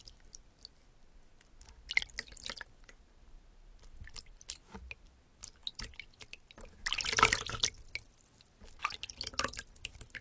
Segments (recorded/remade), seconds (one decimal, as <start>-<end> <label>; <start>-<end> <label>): 0.0-10.2 recorded